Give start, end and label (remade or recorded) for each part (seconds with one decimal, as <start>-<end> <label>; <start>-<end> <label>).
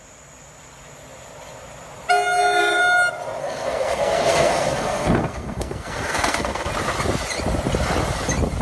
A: 0.0-3.4 recorded; 3.4-6.7 remade; 6.7-8.6 recorded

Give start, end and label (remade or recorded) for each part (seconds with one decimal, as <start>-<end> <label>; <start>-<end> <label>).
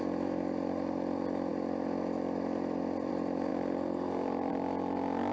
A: 0.0-1.5 recorded; 1.5-3.1 remade; 3.1-3.5 recorded; 3.5-4.5 remade; 4.5-5.3 recorded